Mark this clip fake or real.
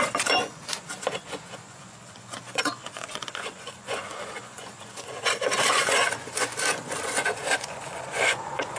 fake